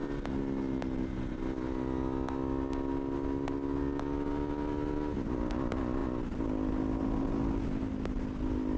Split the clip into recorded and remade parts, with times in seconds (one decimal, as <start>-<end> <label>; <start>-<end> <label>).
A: 0.0-8.8 recorded